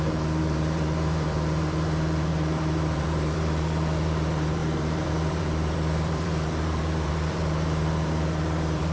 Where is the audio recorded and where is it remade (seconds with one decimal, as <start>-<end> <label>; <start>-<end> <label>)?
0.0-8.9 remade